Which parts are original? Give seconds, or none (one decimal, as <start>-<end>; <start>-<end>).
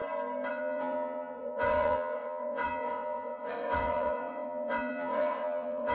0.0-0.5